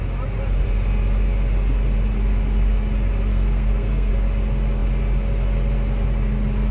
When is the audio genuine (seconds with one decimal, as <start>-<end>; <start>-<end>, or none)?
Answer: 0.0-3.3; 4.1-6.7